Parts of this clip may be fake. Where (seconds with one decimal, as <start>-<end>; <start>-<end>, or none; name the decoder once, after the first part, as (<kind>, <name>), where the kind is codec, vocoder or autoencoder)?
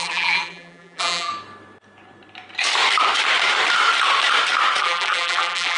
0.0-1.3 (vocoder, BigVGAN v2); 4.8-5.8